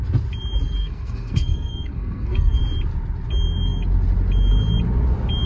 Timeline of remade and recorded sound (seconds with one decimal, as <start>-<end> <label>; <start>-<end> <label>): 0.0-0.8 recorded; 0.8-2.6 remade; 2.6-5.5 recorded